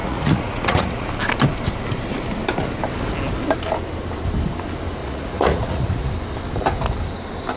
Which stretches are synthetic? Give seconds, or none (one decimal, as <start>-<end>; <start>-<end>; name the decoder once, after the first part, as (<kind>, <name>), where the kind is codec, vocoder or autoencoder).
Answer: 0.0-1.1 (vocoder, Vocos); 5.0-6.1